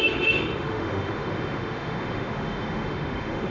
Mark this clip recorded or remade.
remade